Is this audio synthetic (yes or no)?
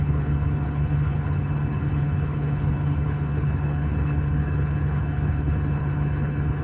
yes